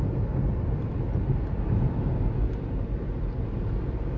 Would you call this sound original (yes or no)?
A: yes